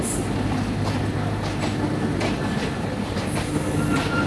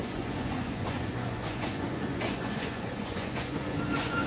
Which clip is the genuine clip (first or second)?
first